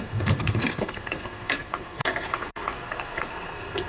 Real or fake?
fake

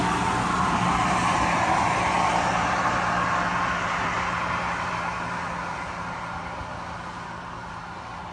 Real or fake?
real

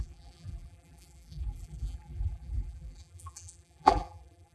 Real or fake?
fake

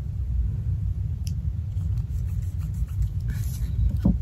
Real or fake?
fake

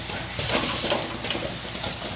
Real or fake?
real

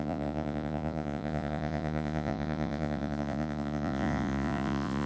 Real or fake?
fake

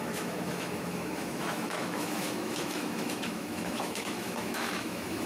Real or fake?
fake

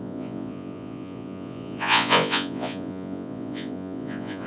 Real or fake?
fake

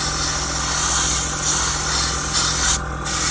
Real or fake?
real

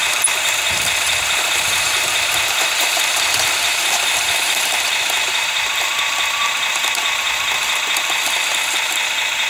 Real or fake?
fake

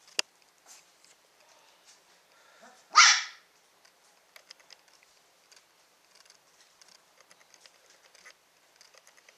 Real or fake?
real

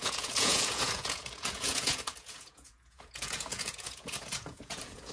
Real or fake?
fake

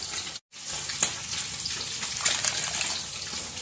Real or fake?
real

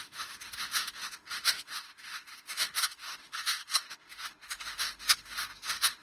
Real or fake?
fake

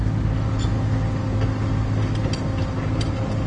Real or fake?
real